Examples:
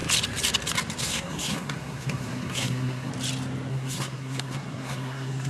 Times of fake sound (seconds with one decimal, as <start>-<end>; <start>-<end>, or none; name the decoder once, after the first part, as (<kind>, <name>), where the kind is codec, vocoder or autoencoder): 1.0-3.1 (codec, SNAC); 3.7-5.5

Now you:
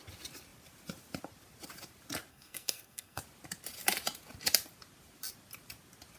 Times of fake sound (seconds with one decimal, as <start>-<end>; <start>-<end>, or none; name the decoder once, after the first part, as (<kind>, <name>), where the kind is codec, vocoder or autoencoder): 2.3-3.2 (codec, SNAC)

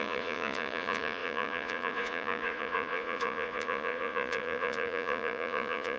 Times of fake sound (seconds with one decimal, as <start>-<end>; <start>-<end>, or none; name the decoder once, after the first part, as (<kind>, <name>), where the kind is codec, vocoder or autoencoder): 0.0-6.0 (vocoder, Vocos)